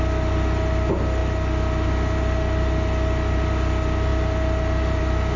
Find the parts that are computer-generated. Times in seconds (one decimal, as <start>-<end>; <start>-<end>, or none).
none